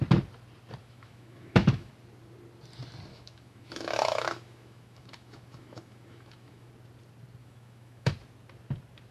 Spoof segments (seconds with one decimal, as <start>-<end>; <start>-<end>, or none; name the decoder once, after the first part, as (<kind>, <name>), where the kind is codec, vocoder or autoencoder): 0.8-1.9 (autoencoder, DAC-VAE); 3.1-6.7; 7.4-8.1